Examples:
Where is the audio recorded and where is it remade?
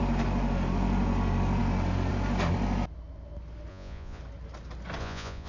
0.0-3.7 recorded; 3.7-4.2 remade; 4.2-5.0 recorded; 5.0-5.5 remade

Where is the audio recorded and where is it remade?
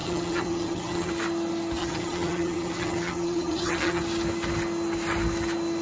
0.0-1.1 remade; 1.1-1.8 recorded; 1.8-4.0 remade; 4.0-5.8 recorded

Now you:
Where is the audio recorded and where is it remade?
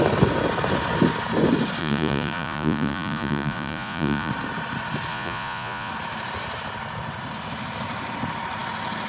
0.0-1.8 recorded; 1.8-4.3 remade; 4.3-5.1 recorded; 5.1-5.9 remade; 5.9-9.1 recorded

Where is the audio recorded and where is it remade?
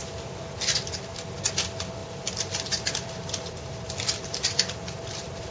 0.0-2.0 recorded; 2.0-5.5 remade